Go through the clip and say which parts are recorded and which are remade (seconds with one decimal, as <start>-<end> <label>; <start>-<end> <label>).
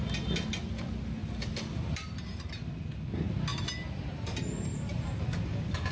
0.0-1.2 recorded; 1.2-2.5 remade; 2.5-3.5 recorded; 3.5-5.2 remade; 5.2-5.9 recorded